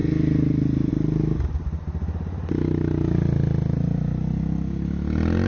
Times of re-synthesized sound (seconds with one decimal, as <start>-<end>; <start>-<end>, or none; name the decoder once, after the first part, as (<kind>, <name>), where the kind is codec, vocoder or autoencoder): none